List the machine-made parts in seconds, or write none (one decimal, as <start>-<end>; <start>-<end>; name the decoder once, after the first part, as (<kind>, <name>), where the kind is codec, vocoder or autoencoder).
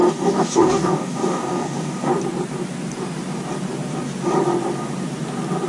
0.0-2.1 (codec, DAC)